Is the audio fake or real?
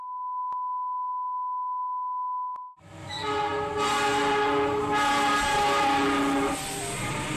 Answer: real